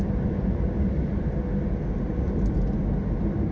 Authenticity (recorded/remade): recorded